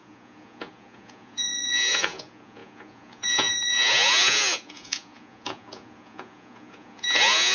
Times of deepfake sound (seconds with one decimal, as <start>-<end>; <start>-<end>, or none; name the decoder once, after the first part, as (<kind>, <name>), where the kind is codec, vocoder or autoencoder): 0.0-7.5 (vocoder, Vocos)

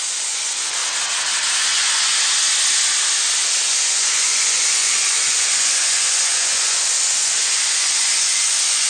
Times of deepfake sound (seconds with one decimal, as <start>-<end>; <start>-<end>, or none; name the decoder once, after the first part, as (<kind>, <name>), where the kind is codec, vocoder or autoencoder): 0.0-0.8 (vocoder, Vocos); 1.6-2.1; 3.7-8.9

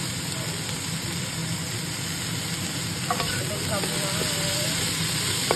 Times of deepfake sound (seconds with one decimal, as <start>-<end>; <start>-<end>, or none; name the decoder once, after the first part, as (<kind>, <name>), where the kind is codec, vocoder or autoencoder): none

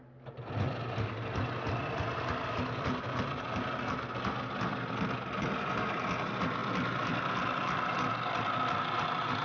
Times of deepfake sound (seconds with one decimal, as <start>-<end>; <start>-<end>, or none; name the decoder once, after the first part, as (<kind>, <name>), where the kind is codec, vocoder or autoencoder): none

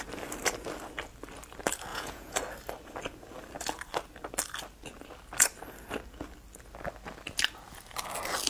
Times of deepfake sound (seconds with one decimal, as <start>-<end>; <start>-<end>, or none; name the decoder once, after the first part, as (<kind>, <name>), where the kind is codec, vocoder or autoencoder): 1.9-2.4 (vocoder, Vocos)

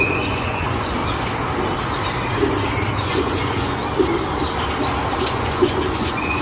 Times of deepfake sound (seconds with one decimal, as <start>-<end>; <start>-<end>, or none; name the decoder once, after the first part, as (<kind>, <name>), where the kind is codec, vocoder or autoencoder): 0.0-1.0 (vocoder, Vocos); 3.0-3.8; 5.2-6.4

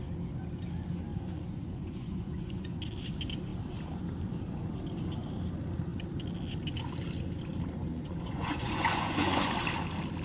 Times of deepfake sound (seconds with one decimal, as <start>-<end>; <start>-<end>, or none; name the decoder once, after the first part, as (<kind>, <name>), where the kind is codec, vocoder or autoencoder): 1.1-2.8 (vocoder, Vocos); 7.9-9.5

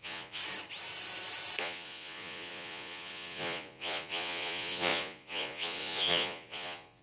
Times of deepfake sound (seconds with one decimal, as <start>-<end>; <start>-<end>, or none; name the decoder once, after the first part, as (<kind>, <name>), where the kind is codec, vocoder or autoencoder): 0.0-0.4 (vocoder, Vocos); 1.6-7.0